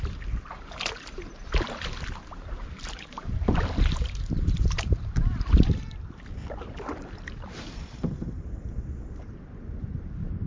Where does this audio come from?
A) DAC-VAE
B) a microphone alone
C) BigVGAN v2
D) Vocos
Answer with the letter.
C